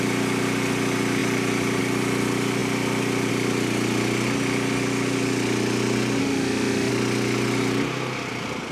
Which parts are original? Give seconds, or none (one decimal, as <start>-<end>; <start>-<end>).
0.0-6.2; 6.9-8.7